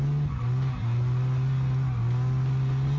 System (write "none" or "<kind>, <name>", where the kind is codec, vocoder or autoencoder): none